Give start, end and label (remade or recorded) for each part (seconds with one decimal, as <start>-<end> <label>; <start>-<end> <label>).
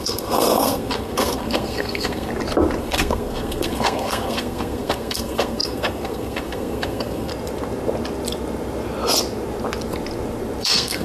0.0-2.3 remade; 2.3-2.8 recorded; 2.8-7.3 remade; 7.3-10.6 recorded; 10.6-11.0 remade